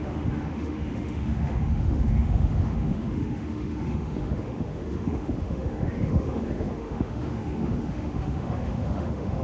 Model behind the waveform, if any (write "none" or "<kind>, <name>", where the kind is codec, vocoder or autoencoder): autoencoder, DAC-VAE